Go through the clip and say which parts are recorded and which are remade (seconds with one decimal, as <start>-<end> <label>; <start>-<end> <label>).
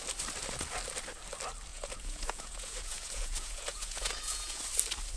0.0-1.7 recorded; 1.7-4.6 remade; 4.6-5.2 recorded